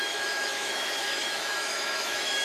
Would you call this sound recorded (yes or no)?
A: no